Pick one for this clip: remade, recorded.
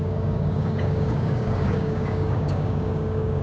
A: remade